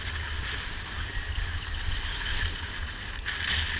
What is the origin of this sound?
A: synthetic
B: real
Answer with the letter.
B